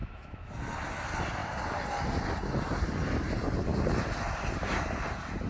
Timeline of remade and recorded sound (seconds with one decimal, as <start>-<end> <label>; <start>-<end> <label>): 0.0-0.5 remade; 0.5-5.5 recorded